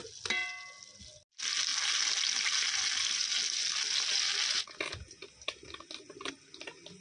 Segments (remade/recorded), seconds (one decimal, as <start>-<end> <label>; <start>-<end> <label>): 0.0-7.0 recorded